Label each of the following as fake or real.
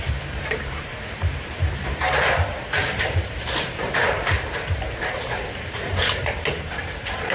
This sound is fake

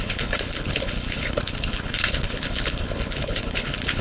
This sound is fake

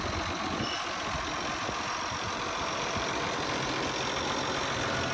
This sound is real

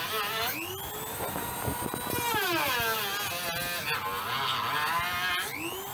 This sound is real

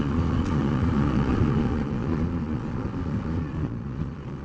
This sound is fake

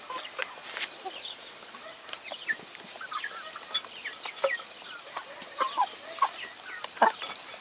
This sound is real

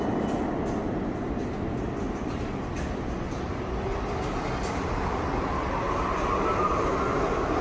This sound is real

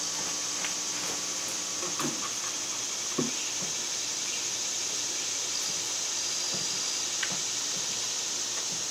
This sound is real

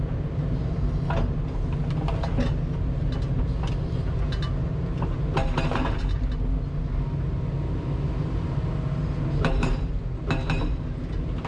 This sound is real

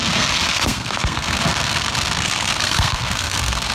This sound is fake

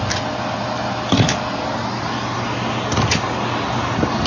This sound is real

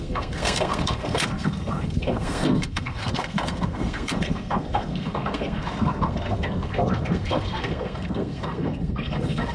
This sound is fake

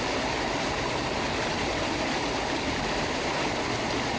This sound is real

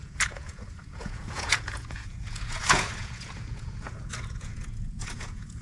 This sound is fake